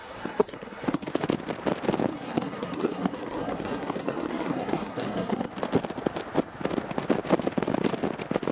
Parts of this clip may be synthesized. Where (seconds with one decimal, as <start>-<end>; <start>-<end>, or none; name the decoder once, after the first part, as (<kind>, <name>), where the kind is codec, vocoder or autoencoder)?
0.0-1.1 (codec, SNAC); 2.1-5.5